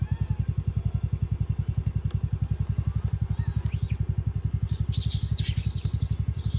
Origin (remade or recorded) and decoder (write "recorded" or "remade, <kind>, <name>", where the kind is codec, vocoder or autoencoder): recorded